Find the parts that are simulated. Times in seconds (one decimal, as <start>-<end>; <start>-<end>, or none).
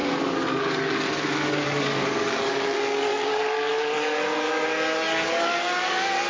0.0-6.3